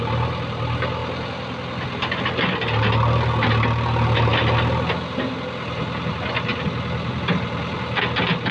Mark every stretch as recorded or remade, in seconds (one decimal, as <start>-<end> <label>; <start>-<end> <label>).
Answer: 0.0-8.5 recorded